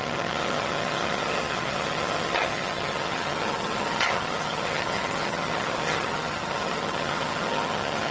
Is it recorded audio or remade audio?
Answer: remade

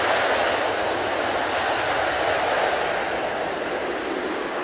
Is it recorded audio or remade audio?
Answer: recorded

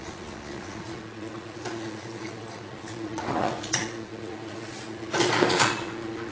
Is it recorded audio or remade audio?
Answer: remade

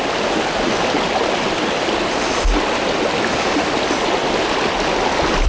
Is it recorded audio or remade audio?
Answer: recorded